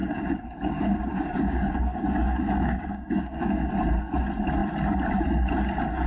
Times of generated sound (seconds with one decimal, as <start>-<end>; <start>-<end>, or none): 0.0-3.7